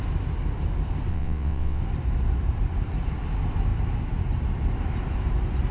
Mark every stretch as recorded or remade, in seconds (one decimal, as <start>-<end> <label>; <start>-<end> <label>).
0.0-1.1 recorded; 1.1-1.8 remade; 1.8-5.7 recorded